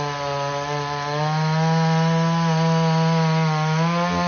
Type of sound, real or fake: real